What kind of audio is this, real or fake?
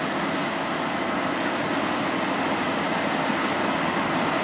real